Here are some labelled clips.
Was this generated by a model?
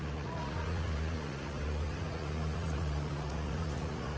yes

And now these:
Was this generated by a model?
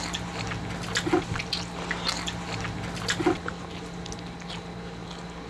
no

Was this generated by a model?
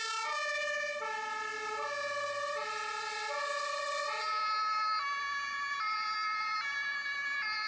no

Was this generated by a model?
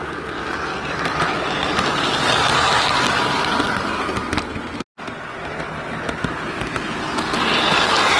no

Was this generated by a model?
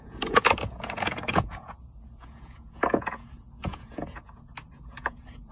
yes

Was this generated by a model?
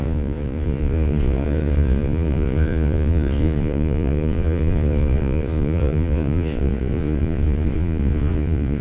yes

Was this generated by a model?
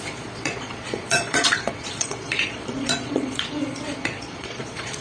yes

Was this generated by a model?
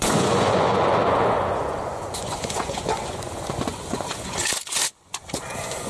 yes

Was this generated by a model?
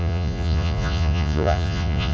yes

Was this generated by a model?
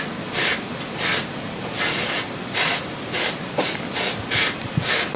no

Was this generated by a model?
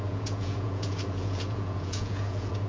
yes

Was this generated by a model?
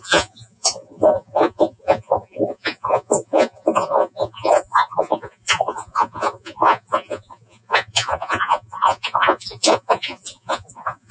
yes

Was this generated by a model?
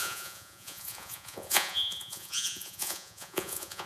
yes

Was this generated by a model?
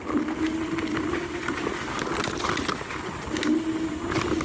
no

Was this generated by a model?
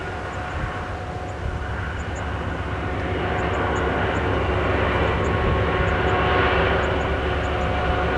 no